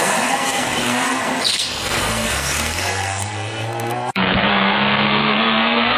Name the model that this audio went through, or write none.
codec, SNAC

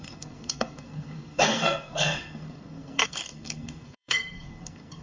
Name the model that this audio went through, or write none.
codec, SNAC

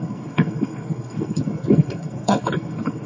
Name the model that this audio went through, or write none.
codec, SNAC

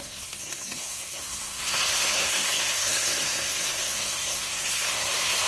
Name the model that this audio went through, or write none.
codec, SNAC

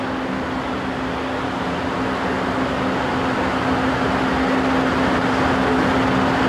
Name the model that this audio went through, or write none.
none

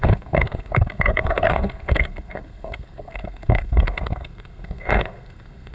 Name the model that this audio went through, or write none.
codec, SNAC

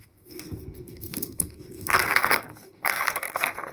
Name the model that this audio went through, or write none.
codec, SNAC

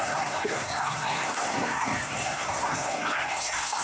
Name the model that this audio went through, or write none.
codec, SNAC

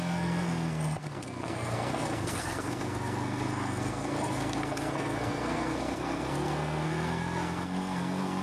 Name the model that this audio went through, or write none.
codec, SNAC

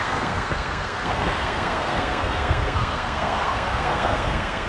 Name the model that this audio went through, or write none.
codec, SNAC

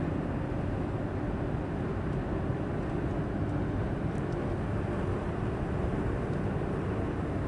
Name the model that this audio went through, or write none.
none